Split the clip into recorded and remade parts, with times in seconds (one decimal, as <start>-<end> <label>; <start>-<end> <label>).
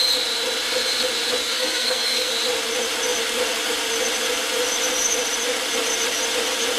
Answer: 0.0-1.4 recorded; 1.4-2.3 remade; 2.3-6.8 recorded